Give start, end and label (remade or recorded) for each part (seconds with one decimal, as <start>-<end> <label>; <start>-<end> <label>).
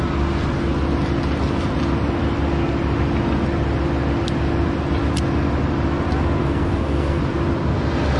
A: 0.0-6.4 recorded; 6.4-7.2 remade; 7.2-8.2 recorded